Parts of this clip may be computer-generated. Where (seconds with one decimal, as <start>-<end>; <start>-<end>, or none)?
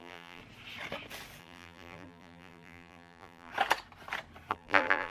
0.0-0.4; 1.4-3.5; 4.5-5.1